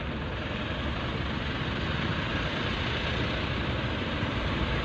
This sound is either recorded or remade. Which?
remade